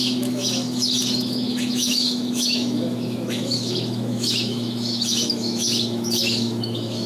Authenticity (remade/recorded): remade